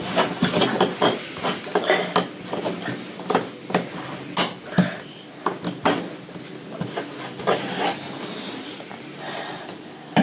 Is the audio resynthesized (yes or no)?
no